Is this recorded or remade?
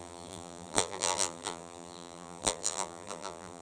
remade